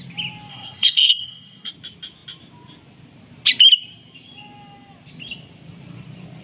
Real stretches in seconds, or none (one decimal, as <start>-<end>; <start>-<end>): 0.0-0.5; 1.7-6.4